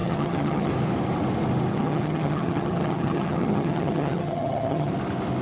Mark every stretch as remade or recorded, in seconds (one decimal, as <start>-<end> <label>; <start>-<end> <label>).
0.0-0.7 remade; 0.7-1.7 recorded; 1.7-4.9 remade; 4.9-5.4 recorded